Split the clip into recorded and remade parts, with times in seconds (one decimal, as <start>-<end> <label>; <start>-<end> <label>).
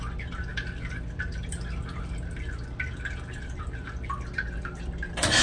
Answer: 0.0-5.4 recorded